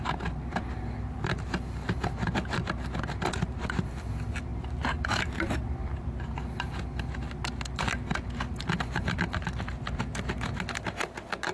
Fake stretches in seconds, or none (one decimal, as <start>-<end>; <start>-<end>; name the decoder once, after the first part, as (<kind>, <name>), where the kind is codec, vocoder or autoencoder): none